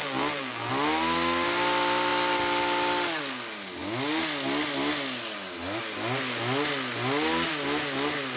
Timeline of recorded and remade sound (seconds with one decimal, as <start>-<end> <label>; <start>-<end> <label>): 0.0-0.7 remade; 0.7-8.4 recorded